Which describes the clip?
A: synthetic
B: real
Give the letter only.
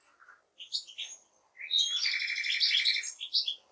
B